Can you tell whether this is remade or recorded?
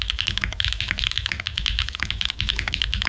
remade